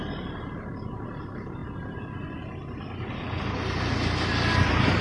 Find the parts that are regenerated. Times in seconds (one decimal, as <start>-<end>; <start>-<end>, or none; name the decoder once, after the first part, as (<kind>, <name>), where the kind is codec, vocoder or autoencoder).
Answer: none